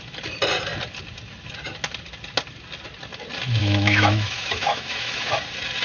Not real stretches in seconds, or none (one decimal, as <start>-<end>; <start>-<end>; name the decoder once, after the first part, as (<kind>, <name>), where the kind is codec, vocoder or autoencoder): 3.6-5.3 (autoencoder, DAC-VAE)